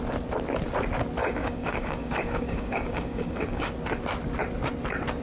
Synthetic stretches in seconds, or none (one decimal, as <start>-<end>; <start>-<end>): 1.2-3.7